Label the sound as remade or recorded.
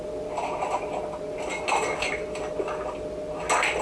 recorded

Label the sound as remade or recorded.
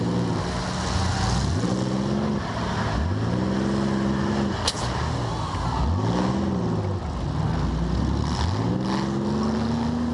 recorded